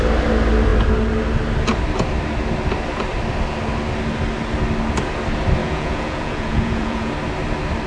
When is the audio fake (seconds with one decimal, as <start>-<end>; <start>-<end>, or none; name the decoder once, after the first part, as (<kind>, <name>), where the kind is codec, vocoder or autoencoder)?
5.6-7.1 (vocoder, Vocos)